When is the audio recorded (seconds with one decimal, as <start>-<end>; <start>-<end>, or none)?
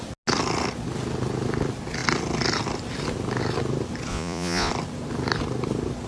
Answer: 0.0-4.1; 4.7-6.1